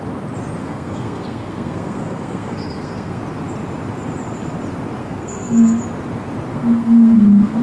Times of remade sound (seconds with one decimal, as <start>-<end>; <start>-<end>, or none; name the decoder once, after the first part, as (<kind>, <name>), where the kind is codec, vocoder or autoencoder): 0.6-3.2 (codec, SNAC); 5.0-5.8; 6.5-7.6